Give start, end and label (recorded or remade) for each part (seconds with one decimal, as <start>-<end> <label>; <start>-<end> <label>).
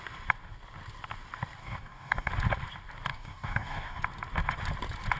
0.0-1.6 recorded; 1.6-2.3 remade; 2.3-3.1 recorded; 3.1-4.0 remade; 4.0-5.2 recorded